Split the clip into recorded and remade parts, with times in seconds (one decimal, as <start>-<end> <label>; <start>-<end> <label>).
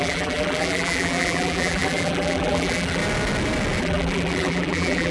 0.0-3.0 remade; 3.0-3.8 recorded; 3.8-5.1 remade